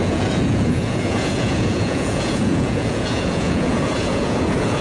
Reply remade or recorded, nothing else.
remade